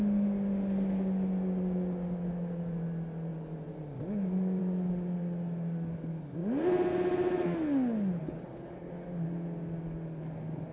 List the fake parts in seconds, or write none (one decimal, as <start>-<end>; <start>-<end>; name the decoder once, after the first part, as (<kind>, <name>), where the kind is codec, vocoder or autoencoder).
8.2-8.9 (codec, HILCodec)